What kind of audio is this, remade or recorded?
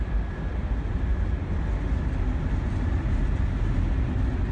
recorded